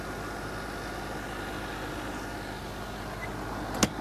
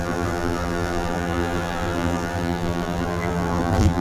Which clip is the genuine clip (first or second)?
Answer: first